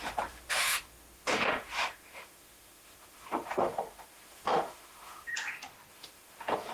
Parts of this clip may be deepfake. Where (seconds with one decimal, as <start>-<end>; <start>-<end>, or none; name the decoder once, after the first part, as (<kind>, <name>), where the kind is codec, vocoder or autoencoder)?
0.0-5.3 (autoencoder, DAC-VAE); 5.9-6.7